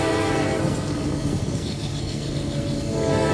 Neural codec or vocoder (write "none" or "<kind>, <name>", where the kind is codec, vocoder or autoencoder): codec, SNAC